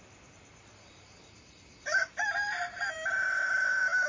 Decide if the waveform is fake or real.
fake